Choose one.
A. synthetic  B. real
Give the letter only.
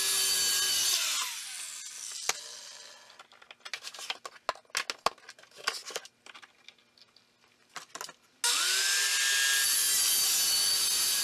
B